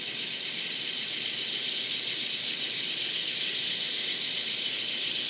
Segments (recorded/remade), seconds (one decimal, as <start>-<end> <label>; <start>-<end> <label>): 0.0-5.3 recorded